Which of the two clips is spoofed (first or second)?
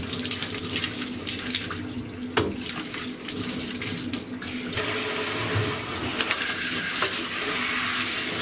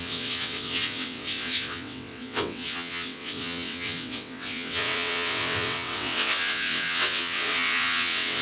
second